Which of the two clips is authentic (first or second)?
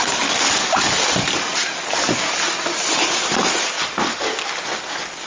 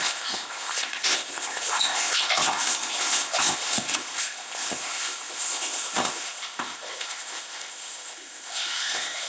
first